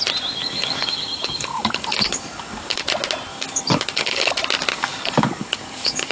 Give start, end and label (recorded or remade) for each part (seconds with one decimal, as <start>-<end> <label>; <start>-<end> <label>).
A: 0.0-0.4 recorded; 0.4-2.8 remade; 2.8-3.3 recorded; 3.3-4.3 remade; 4.3-4.7 recorded; 4.7-6.1 remade